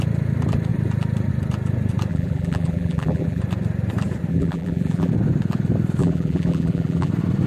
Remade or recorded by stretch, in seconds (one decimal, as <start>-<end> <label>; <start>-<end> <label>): 0.0-2.1 recorded; 2.1-3.4 remade; 3.4-4.3 recorded; 4.3-5.1 remade; 5.1-6.0 recorded; 6.0-7.1 remade; 7.1-7.5 recorded